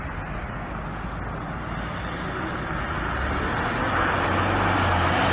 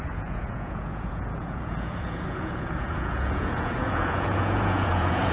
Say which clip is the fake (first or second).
second